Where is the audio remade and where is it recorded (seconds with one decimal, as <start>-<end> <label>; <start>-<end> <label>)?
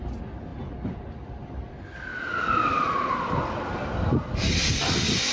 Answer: 0.0-5.3 recorded